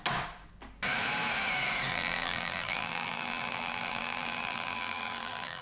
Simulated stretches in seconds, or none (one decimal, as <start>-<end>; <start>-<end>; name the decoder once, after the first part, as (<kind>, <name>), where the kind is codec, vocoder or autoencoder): 1.9-5.6 (vocoder, BigVGAN v2)